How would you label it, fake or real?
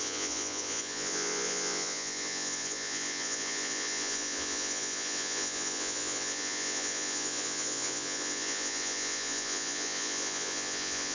fake